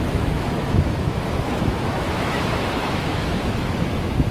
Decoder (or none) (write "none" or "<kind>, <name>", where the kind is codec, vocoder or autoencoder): autoencoder, DAC-VAE